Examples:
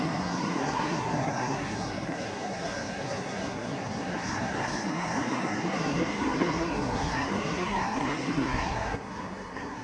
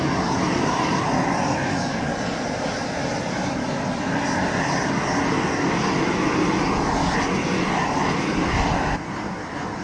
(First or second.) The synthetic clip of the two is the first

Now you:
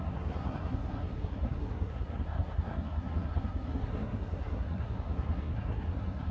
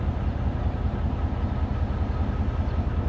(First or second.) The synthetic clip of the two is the first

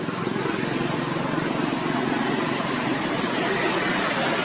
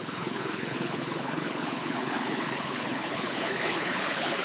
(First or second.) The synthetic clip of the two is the second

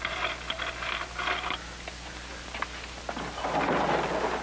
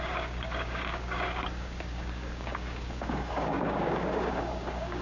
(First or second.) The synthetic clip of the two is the second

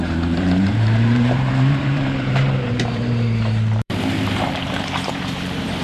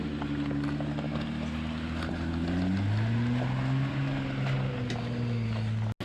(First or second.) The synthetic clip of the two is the first